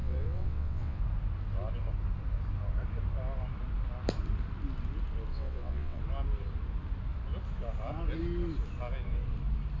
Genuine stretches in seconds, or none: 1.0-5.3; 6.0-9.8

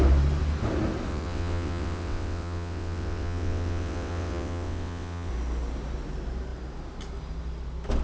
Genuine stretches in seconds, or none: 0.0-1.1; 5.3-8.0

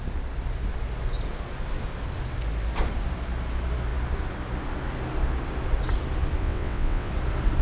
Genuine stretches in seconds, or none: 0.0-6.4; 7.1-7.6

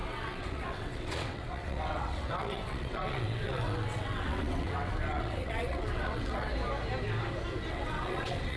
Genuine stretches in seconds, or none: 6.5-7.7

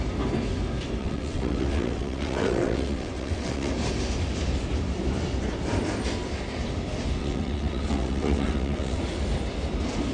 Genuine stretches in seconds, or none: 0.0-1.0; 3.7-7.2; 9.0-10.1

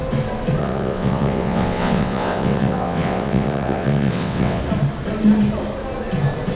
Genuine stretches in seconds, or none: 0.0-0.6; 4.6-6.6